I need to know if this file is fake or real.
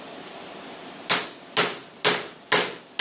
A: real